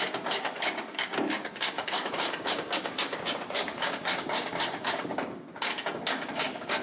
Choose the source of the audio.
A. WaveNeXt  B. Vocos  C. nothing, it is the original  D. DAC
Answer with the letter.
D